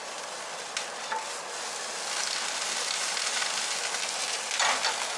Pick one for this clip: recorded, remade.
recorded